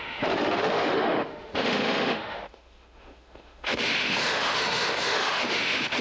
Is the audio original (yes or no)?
no